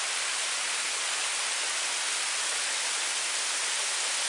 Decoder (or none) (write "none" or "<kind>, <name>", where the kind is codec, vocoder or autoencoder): none